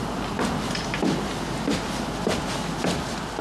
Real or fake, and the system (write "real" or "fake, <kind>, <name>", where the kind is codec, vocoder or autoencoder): fake, vocoder, BigVGAN v2